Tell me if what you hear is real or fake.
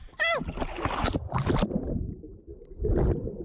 real